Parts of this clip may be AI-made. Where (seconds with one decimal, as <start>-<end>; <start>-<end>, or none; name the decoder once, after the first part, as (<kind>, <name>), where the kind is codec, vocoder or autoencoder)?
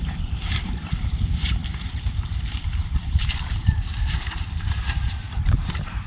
0.0-1.6 (vocoder, BigVGAN v2); 2.4-6.1